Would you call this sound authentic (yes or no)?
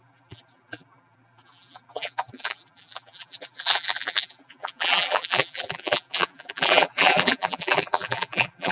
no